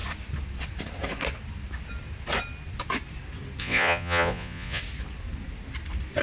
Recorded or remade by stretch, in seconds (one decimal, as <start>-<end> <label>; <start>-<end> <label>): 0.0-3.6 recorded; 3.6-4.8 remade; 4.8-6.2 recorded